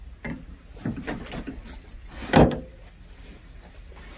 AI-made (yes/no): no